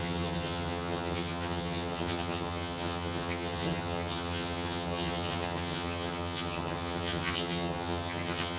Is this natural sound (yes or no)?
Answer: no